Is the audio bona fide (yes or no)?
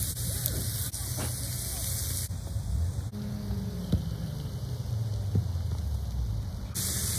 yes